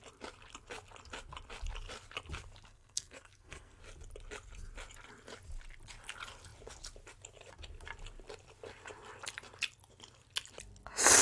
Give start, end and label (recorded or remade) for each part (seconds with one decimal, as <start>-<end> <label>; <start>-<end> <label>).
0.0-2.7 recorded; 2.7-3.8 remade; 3.8-11.2 recorded

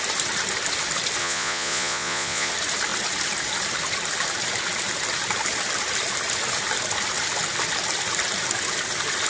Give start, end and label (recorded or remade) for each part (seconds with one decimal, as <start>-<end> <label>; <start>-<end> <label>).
0.0-1.2 recorded; 1.2-2.5 remade; 2.5-9.3 recorded

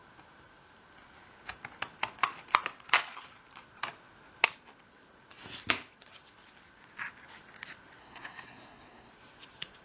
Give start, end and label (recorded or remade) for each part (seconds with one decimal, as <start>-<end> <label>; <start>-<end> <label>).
0.0-8.0 recorded; 8.0-9.1 remade; 9.1-9.8 recorded

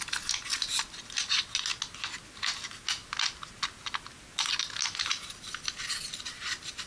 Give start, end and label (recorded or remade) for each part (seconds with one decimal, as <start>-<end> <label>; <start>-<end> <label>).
0.0-6.9 recorded

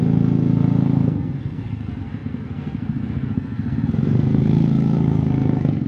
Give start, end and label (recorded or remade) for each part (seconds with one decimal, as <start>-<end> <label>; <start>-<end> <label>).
0.0-5.9 remade

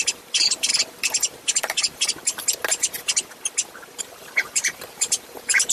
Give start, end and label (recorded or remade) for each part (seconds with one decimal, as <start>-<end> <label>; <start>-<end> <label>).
0.0-0.7 remade; 0.7-4.0 recorded; 4.0-5.7 remade

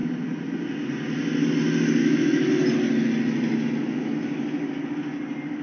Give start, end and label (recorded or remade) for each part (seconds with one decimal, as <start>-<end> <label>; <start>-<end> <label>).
0.0-2.0 recorded; 2.0-2.5 remade; 2.5-5.6 recorded